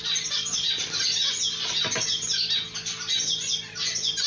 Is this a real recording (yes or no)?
yes